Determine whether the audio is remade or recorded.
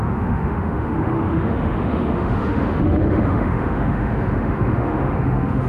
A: remade